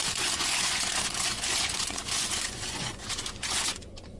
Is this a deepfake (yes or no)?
yes